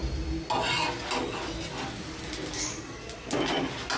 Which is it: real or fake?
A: real